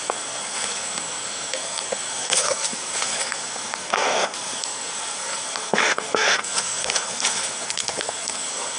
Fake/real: fake